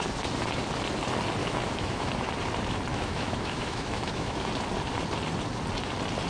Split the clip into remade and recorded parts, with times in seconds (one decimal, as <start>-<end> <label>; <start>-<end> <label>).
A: 0.0-1.4 recorded; 1.4-2.1 remade; 2.1-2.9 recorded; 2.9-4.5 remade; 4.5-6.3 recorded